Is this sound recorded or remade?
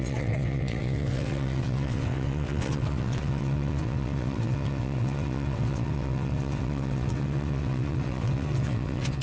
remade